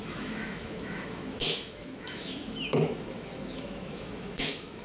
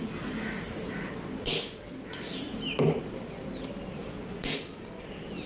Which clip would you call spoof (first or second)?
first